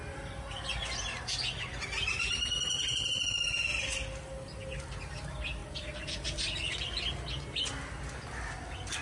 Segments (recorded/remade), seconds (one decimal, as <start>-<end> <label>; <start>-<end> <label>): 0.0-1.7 recorded; 1.7-2.3 remade; 2.3-9.0 recorded